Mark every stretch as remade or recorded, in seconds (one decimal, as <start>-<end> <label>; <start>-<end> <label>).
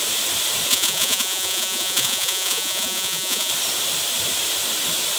0.0-0.7 recorded; 0.7-3.5 remade; 3.5-5.2 recorded